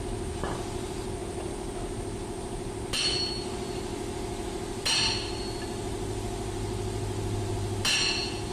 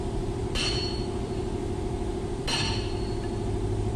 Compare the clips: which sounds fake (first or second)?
second